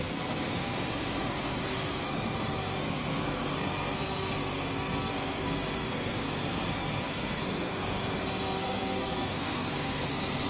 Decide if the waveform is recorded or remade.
remade